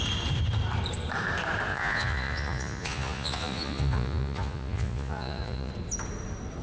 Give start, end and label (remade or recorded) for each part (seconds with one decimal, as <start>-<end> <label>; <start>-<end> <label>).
0.0-1.7 recorded; 1.7-5.7 remade; 5.7-6.6 recorded